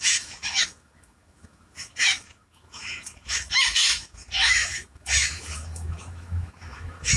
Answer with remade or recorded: remade